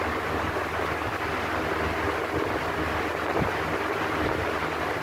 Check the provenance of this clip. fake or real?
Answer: real